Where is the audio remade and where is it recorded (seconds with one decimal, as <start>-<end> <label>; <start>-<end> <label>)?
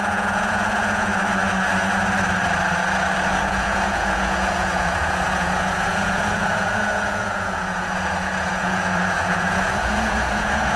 0.0-1.1 remade; 1.1-3.3 recorded; 3.3-10.8 remade